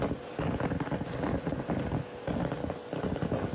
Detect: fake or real real